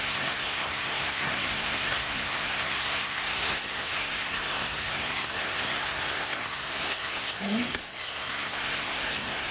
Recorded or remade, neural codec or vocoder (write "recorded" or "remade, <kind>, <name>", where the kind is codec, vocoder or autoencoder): remade, codec, SNAC